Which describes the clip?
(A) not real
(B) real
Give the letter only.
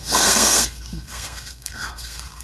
A